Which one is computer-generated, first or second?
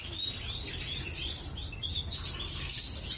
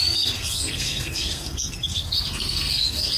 second